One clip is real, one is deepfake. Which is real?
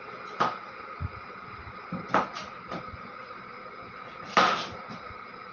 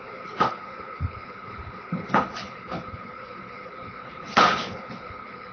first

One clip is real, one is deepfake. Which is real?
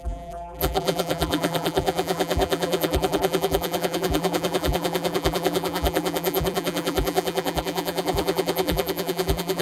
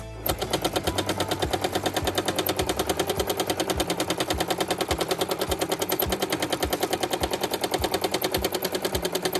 second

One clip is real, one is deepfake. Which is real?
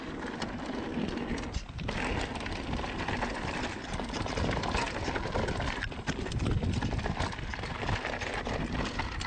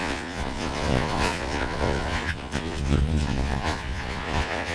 first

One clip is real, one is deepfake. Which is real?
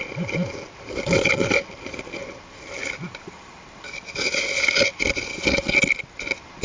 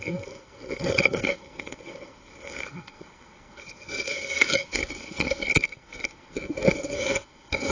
first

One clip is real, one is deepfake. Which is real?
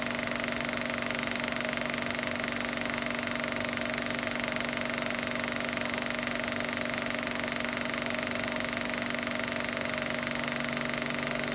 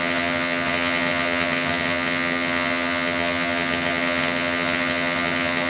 first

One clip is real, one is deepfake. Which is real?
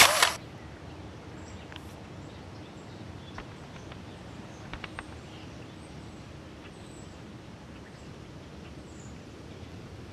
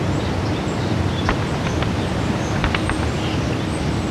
second